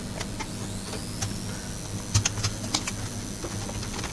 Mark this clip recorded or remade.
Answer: recorded